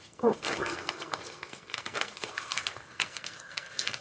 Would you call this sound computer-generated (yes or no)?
yes